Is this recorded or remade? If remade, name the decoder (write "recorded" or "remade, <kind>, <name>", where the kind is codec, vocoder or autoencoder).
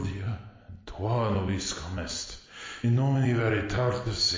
recorded